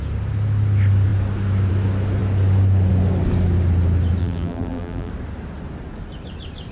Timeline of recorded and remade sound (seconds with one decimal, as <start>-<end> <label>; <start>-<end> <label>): 0.0-4.2 recorded; 4.2-5.1 remade; 5.1-6.7 recorded